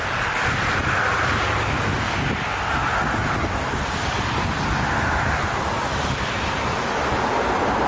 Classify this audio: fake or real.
real